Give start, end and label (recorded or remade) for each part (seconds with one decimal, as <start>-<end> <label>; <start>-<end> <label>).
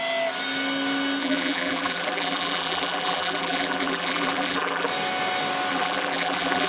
0.0-1.2 recorded; 1.2-4.9 remade; 4.9-5.7 recorded; 5.7-6.7 remade